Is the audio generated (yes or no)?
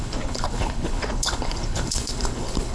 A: yes